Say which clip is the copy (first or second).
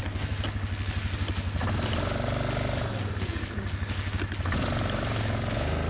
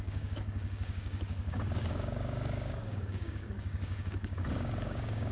second